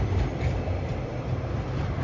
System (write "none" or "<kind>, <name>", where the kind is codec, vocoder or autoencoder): vocoder, BigVGAN v2